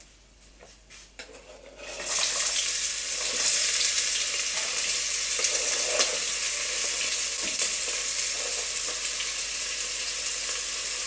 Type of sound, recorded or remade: recorded